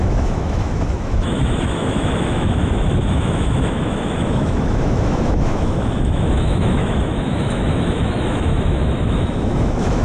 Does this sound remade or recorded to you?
remade